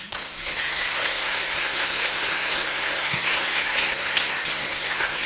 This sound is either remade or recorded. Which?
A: remade